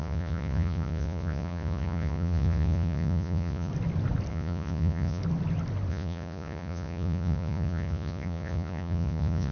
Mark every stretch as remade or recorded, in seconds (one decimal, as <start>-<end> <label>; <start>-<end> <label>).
0.0-3.7 remade; 3.7-4.3 recorded; 4.3-5.2 remade; 5.2-5.9 recorded; 5.9-9.5 remade